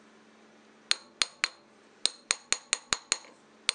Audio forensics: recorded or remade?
recorded